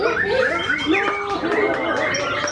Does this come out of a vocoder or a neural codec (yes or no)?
no